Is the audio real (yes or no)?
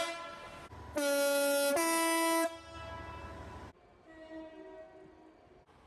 yes